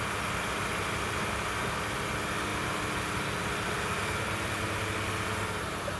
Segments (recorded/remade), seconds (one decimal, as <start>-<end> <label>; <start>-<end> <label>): 0.0-6.0 recorded